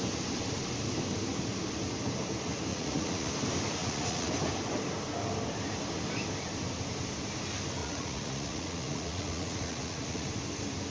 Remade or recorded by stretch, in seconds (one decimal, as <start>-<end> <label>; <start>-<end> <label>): 0.0-2.7 recorded; 2.7-3.3 remade; 3.3-3.8 recorded; 3.8-4.3 remade; 4.3-7.8 recorded; 7.8-10.3 remade; 10.3-10.9 recorded